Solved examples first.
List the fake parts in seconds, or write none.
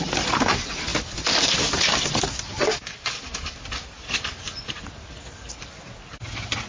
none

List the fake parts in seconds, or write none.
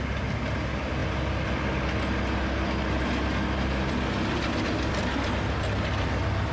none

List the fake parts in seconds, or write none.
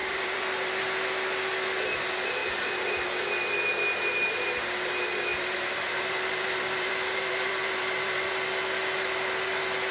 0.0-0.8 (vocoder, BigVGAN v2); 2.4-3.5; 5.3-8.3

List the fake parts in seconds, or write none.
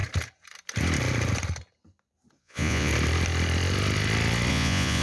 2.4-2.9 (vocoder, Vocos); 4.5-5.0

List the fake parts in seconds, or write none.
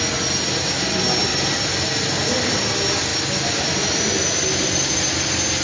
none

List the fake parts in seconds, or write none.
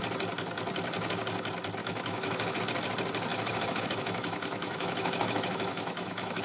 1.8-2.6 (autoencoder, DAC-VAE); 3.3-6.4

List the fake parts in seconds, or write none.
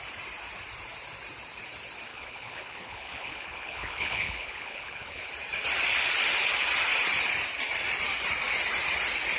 2.1-5.2 (codec, HILCodec)